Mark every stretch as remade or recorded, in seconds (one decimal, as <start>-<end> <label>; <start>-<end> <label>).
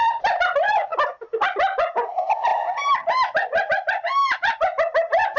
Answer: 0.0-0.9 remade; 0.9-2.1 recorded; 2.1-2.5 remade; 2.5-5.4 recorded